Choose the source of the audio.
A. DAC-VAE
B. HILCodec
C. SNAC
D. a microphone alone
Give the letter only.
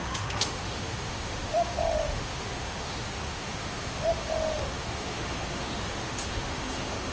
A